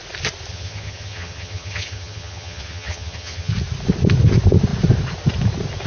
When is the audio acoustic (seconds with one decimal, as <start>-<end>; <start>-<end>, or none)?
0.0-0.5; 3.5-5.9